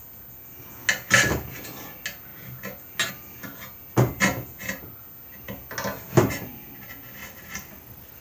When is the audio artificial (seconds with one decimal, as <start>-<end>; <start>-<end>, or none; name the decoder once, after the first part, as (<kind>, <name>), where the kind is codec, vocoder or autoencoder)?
7.2-8.2 (vocoder, BigVGAN v2)